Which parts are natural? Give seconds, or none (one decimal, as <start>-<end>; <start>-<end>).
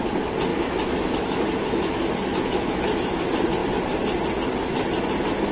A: 0.0-0.5; 3.2-5.5